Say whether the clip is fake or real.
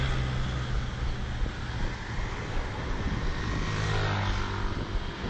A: real